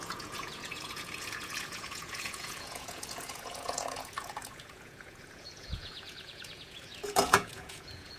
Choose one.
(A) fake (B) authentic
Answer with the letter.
A